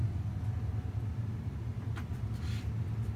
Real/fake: real